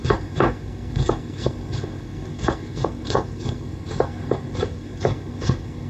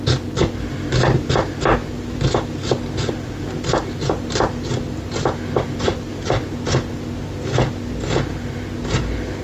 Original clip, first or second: second